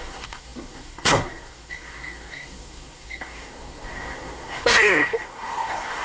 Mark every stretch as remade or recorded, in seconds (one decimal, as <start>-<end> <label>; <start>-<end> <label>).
0.0-6.0 remade